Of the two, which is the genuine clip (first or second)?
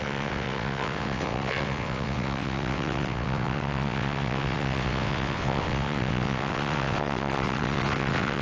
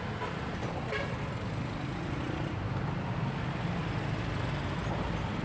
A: second